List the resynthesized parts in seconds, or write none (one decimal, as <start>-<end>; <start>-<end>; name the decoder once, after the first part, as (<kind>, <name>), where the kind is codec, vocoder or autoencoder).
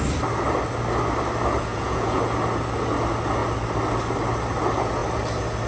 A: 1.7-2.2 (vocoder, Vocos)